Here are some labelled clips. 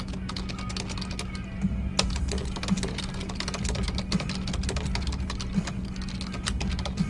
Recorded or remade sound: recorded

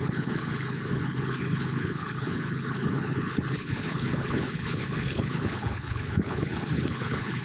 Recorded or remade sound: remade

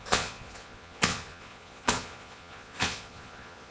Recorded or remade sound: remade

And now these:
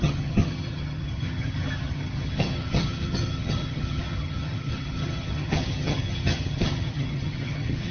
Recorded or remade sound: remade